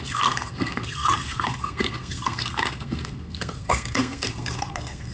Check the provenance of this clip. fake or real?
fake